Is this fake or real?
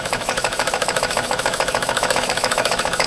fake